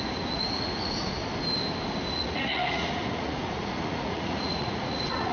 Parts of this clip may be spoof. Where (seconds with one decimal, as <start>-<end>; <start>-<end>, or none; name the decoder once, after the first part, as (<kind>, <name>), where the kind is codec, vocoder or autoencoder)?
0.0-1.2 (vocoder, Vocos); 2.1-5.3